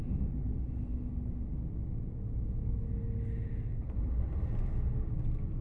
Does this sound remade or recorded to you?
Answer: recorded